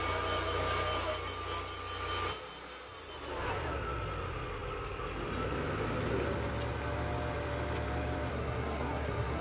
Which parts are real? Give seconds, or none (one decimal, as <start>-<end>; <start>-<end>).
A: 0.0-8.3